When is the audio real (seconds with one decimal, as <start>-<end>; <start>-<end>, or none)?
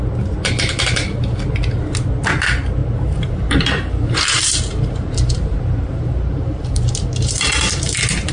0.0-2.8; 7.6-8.3